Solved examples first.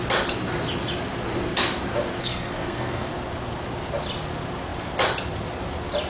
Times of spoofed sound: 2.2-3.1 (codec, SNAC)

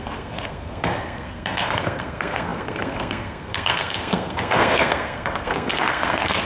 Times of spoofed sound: 0.0-6.4 (codec, SNAC)